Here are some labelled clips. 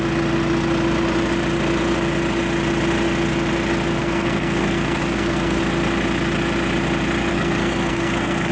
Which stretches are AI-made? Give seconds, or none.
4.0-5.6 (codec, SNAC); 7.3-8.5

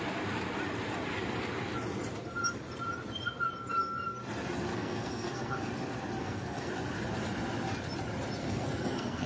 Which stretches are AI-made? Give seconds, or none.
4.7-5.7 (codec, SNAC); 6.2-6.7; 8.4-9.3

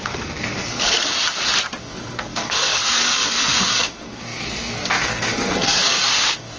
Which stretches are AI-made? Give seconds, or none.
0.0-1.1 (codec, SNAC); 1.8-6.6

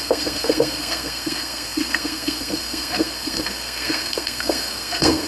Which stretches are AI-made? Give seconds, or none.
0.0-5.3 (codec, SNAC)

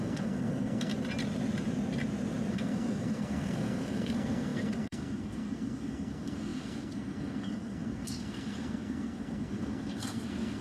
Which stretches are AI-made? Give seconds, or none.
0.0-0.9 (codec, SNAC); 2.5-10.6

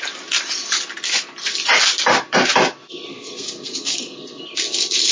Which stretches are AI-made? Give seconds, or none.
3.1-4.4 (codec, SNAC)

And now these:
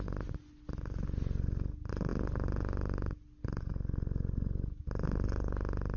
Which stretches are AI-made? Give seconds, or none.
none

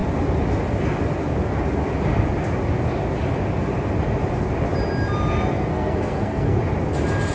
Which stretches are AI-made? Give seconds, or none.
5.7-6.6 (codec, SNAC)